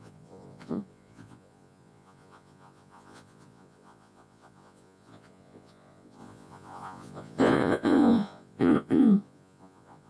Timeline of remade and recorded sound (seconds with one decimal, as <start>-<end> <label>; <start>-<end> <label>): 0.0-10.1 remade